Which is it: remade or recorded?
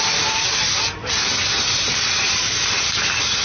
recorded